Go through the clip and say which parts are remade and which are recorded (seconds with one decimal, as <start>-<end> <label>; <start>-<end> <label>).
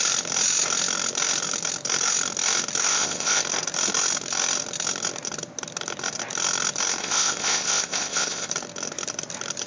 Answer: 0.0-2.9 recorded; 2.9-3.4 remade; 3.4-7.0 recorded; 7.0-8.5 remade; 8.5-9.7 recorded